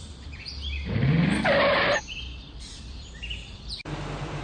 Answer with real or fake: fake